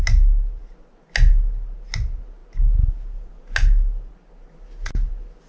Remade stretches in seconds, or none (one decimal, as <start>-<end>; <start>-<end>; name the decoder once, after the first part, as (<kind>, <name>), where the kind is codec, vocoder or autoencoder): none